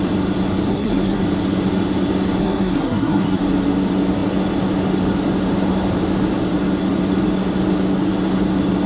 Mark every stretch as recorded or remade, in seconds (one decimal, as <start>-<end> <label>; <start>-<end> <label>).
0.0-0.7 recorded; 0.7-1.2 remade; 1.2-2.4 recorded; 2.4-3.4 remade; 3.4-8.9 recorded